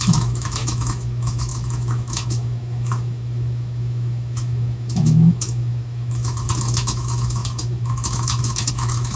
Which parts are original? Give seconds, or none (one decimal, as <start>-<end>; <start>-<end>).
none